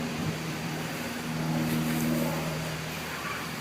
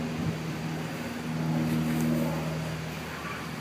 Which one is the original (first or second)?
second